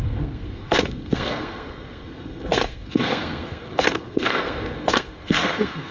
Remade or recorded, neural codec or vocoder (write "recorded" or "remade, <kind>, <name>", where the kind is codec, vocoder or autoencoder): remade, codec, SNAC